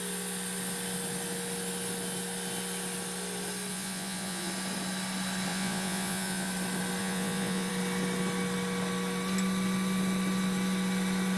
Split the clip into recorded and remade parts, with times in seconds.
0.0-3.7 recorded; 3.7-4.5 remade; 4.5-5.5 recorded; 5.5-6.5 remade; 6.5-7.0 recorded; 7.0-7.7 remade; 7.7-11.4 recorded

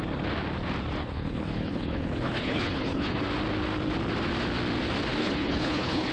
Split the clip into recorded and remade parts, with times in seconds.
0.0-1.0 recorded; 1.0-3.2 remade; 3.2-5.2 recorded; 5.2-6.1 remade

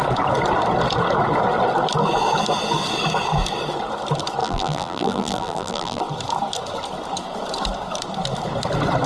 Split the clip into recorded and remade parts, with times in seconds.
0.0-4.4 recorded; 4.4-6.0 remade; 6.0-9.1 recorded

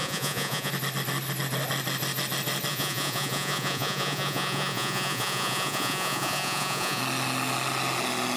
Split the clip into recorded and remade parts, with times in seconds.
0.0-0.7 remade; 0.7-2.7 recorded; 2.7-7.0 remade; 7.0-8.4 recorded